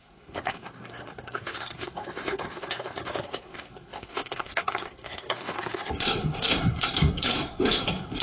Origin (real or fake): fake